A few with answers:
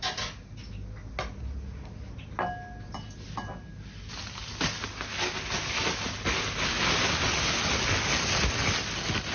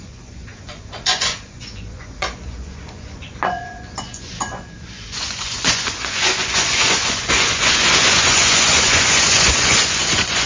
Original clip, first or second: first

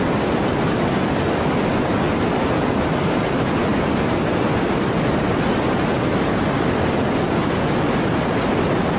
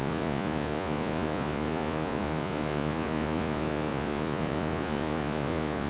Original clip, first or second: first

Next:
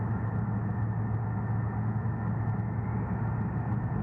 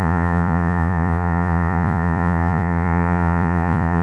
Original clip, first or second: first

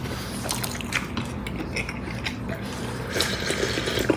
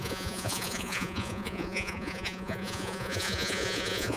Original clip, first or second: first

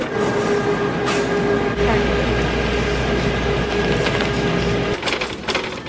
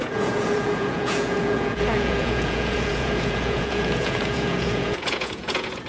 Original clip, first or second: first